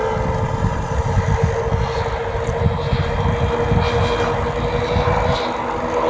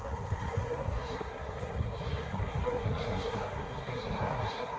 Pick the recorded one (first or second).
first